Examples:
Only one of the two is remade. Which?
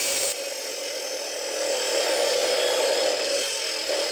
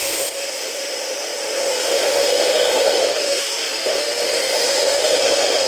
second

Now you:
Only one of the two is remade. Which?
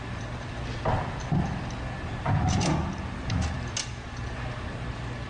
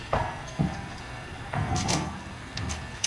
second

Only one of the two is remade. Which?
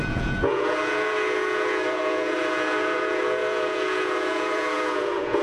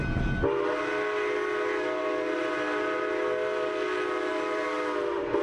first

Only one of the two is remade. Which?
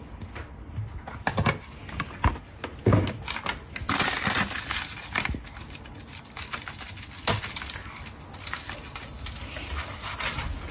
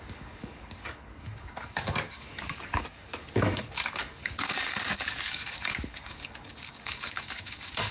second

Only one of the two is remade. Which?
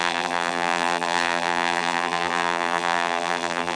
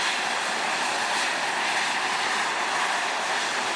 first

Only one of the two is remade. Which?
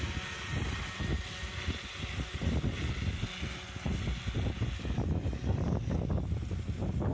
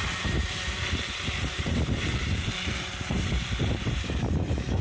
second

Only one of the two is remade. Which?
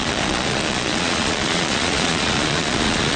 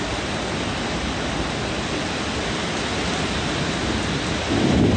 first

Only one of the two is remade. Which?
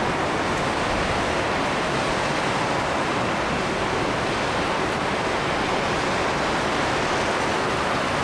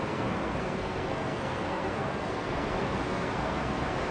second